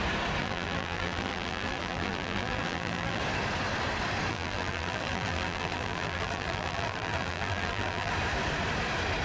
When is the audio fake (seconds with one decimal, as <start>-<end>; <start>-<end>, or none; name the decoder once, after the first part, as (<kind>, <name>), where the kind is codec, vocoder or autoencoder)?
0.4-3.2 (vocoder, BigVGAN v2); 4.3-8.1